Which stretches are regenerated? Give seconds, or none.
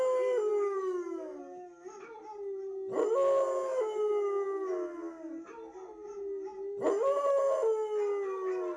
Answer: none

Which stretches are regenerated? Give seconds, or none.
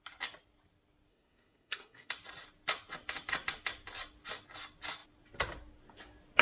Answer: 1.1-2.1 (codec, SNAC)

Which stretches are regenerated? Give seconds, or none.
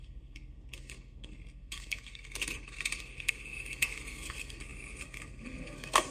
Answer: 0.0-6.1 (codec, SNAC)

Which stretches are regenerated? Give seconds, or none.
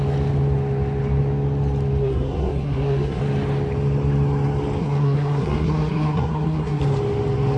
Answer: 2.0-3.2 (codec, SNAC); 4.8-6.8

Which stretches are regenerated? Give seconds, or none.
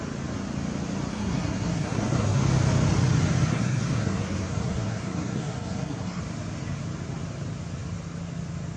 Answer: 1.1-2.4 (codec, SNAC); 3.5-6.2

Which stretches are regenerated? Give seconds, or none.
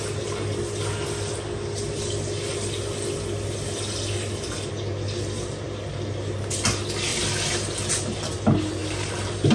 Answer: none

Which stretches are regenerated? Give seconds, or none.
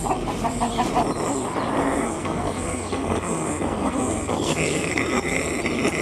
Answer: 1.8-5.4 (codec, SNAC)